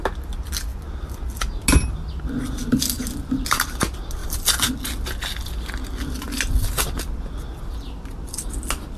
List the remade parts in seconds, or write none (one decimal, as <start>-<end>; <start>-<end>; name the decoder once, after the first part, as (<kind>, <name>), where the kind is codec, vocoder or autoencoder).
none